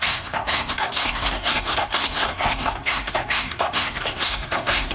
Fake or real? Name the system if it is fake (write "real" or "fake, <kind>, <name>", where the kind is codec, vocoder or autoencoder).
fake, codec, SNAC